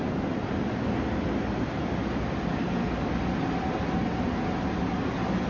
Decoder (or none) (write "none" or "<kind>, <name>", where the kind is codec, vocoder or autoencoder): none